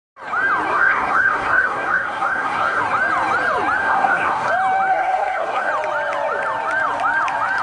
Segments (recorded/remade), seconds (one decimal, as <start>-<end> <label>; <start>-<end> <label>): 0.0-0.7 recorded; 0.7-2.8 remade; 2.8-3.8 recorded; 3.8-4.5 remade; 4.5-4.9 recorded; 4.9-5.7 remade; 5.7-7.6 recorded